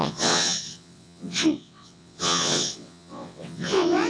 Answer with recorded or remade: remade